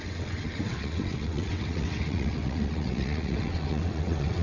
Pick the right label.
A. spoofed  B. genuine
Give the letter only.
A